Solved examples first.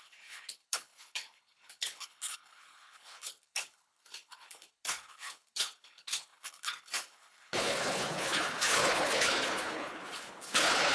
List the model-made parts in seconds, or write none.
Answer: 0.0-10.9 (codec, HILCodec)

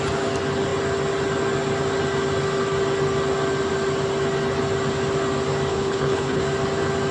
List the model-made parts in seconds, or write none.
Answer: 5.7-6.4 (codec, HILCodec)

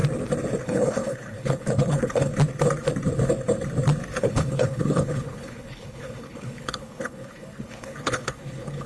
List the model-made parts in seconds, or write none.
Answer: 0.6-2.3 (codec, HILCodec); 4.2-8.9

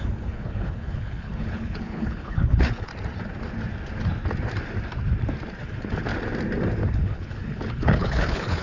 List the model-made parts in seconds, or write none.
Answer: 0.0-2.9 (codec, HILCodec); 5.6-6.1; 6.9-8.6

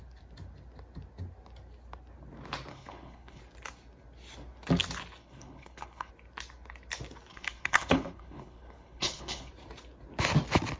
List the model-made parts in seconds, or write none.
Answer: 2.7-3.4 (codec, HILCodec); 5.2-6.1; 7.3-9.5

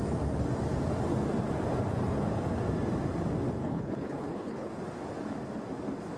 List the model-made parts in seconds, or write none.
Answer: 3.6-4.7 (codec, HILCodec)

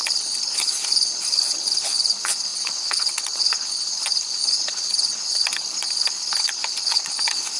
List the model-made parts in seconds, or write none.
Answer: 0.0-7.6 (codec, HILCodec)